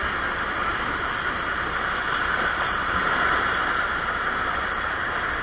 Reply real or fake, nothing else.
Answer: real